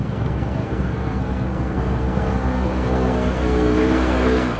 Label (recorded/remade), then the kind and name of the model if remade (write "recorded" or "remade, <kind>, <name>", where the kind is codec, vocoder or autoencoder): remade, codec, SNAC